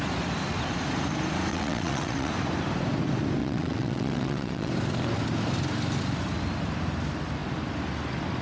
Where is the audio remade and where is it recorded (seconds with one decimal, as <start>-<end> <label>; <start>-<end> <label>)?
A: 0.0-1.5 recorded; 1.5-2.3 remade; 2.3-3.4 recorded; 3.4-4.7 remade; 4.7-8.4 recorded